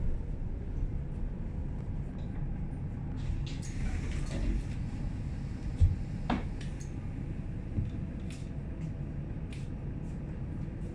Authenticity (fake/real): real